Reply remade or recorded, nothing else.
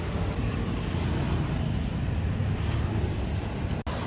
recorded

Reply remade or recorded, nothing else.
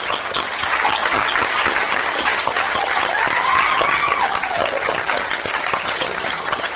remade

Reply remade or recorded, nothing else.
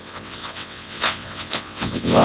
remade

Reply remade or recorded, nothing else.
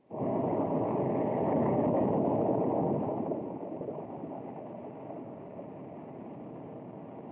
recorded